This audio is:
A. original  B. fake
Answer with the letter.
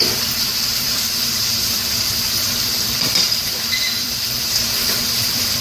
B